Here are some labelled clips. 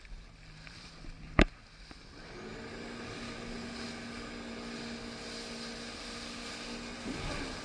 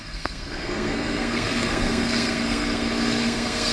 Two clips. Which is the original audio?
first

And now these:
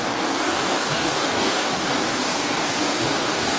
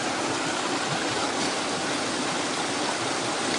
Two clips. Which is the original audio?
second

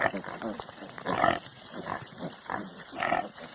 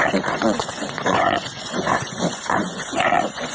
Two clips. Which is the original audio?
first